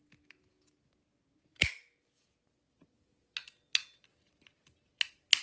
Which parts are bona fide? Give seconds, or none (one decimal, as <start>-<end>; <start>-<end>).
0.0-5.4